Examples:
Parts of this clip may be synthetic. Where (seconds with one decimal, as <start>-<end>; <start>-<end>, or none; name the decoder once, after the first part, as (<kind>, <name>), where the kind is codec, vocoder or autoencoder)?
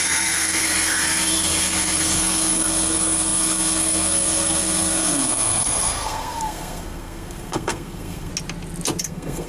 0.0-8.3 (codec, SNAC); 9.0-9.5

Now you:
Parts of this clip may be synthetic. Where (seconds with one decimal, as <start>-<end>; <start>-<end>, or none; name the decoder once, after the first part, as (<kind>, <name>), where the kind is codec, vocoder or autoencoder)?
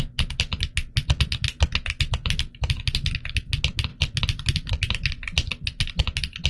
3.9-4.7 (vocoder, BigVGAN v2); 5.5-6.0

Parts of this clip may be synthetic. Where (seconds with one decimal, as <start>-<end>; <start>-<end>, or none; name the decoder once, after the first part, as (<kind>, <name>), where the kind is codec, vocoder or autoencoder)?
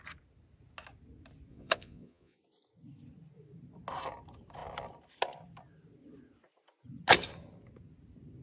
1.5-2.4 (vocoder, Vocos)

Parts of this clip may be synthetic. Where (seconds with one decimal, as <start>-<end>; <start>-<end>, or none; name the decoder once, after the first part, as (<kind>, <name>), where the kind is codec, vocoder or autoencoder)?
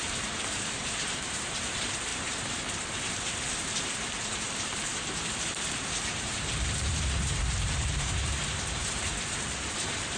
0.0-10.2 (vocoder, BigVGAN v2)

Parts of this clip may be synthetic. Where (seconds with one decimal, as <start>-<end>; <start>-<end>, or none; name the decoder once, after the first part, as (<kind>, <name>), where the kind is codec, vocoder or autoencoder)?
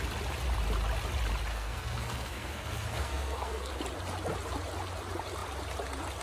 1.5-3.7 (codec, SNAC)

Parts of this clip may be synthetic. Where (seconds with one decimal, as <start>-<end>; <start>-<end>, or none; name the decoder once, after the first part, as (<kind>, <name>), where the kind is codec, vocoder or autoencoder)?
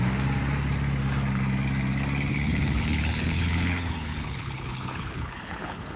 2.3-6.0 (codec, HILCodec)